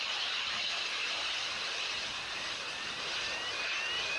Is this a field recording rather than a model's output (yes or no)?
no